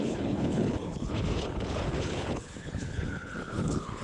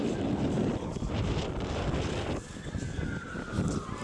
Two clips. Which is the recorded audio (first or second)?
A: second